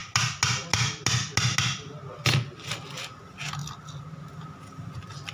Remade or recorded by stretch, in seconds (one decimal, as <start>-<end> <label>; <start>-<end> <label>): 0.0-5.3 recorded